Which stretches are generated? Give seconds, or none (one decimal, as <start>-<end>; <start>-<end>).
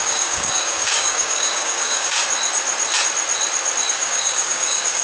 0.0-2.2; 3.9-5.0